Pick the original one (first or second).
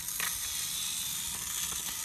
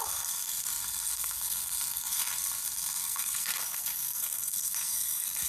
first